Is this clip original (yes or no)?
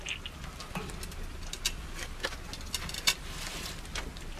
yes